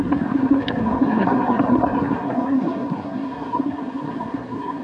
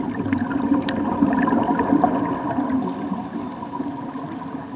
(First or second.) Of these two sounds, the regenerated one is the first